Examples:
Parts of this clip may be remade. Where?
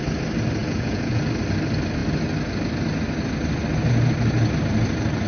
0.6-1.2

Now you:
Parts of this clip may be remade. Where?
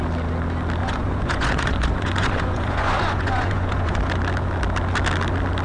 0.8-4.0